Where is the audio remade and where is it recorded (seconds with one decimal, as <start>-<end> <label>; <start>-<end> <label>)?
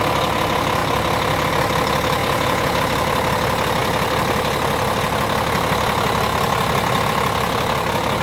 0.0-2.2 recorded; 2.2-2.8 remade; 2.8-8.2 recorded